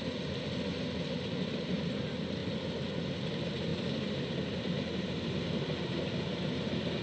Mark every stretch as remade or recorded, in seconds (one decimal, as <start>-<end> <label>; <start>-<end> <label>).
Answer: 0.0-2.4 recorded; 2.4-3.1 remade; 3.1-3.7 recorded; 3.7-4.6 remade; 4.6-7.0 recorded